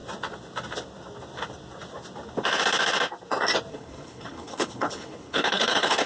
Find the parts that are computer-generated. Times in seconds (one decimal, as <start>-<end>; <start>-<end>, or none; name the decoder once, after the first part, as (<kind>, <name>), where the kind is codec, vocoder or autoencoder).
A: 3.7-6.1 (codec, HILCodec)